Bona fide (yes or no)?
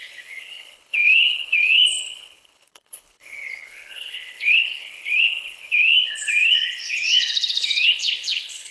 no